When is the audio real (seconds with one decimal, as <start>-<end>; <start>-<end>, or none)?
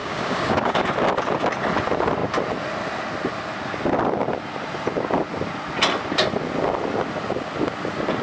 0.8-8.2